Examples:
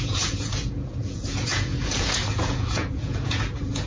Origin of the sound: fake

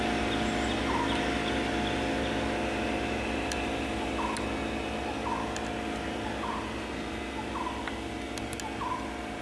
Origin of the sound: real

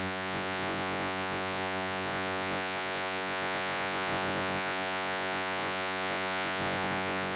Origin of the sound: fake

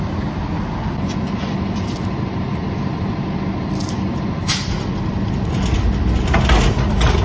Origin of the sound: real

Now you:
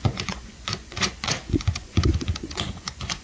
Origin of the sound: fake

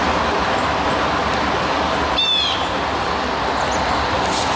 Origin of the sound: real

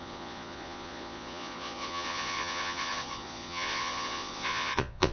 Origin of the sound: fake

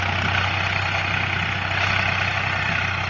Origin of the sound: real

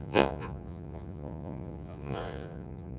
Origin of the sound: fake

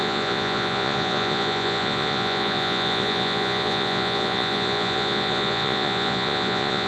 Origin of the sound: fake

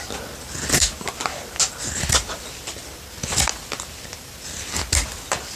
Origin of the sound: real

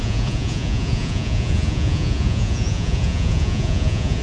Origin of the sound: fake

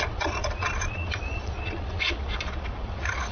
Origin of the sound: fake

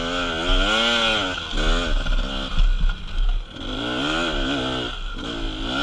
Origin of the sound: real